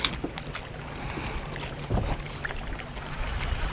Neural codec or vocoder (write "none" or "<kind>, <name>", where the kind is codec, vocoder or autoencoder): none